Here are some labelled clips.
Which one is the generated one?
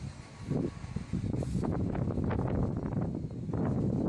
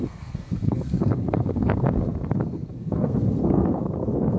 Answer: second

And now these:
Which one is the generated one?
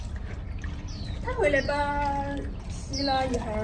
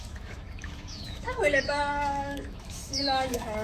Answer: second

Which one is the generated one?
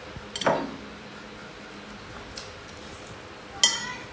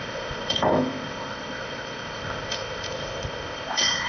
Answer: second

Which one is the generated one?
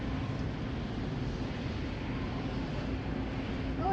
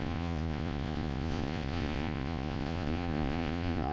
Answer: second